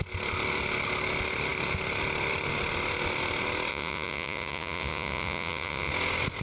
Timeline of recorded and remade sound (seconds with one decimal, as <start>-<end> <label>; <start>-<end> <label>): 0.0-3.7 recorded; 3.7-5.9 remade; 5.9-6.4 recorded